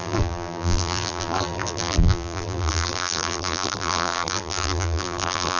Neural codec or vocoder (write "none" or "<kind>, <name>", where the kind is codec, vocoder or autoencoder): vocoder, BigVGAN v2